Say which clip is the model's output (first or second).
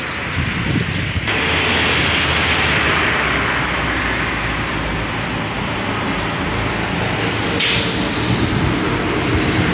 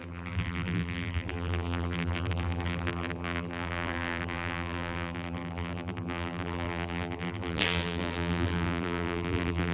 second